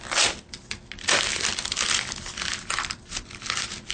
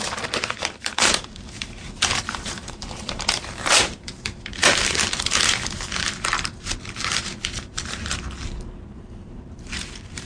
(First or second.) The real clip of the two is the first